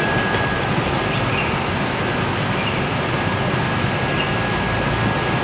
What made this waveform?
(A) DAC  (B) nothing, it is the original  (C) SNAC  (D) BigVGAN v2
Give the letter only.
B